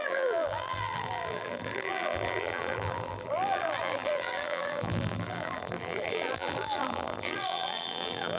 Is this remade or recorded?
remade